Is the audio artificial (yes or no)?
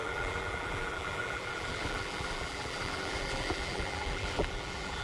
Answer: yes